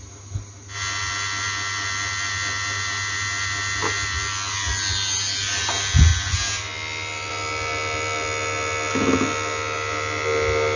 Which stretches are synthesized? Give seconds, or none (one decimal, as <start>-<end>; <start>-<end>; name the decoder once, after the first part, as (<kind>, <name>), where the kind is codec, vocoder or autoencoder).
none